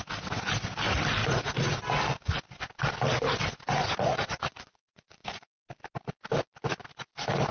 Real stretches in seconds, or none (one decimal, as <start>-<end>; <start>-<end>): 0.0-1.2; 1.8-3.8; 5.6-7.5